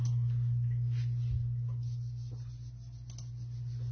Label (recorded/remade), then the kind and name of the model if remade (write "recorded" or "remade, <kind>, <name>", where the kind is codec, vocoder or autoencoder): recorded